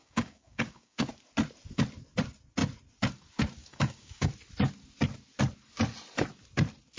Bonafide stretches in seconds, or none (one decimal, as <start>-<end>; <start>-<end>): 1.1-3.6; 4.3-7.0

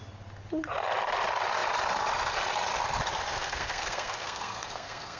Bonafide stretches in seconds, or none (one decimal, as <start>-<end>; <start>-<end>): 0.0-3.3

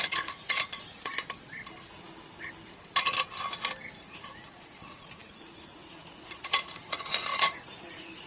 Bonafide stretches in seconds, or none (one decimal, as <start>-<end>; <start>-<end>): 1.1-4.0